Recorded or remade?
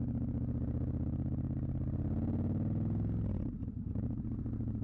recorded